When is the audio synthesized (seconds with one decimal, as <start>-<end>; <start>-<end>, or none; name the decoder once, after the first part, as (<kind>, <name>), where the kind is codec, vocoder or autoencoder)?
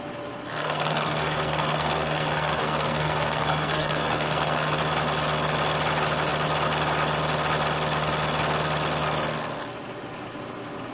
0.6-4.8 (codec, SNAC)